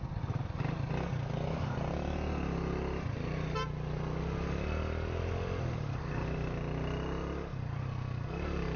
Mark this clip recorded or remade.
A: recorded